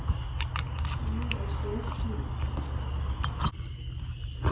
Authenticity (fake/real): real